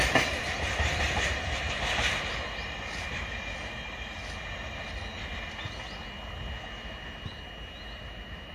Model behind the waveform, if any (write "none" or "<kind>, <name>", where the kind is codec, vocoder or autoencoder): none